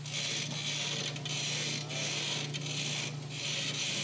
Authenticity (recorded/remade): recorded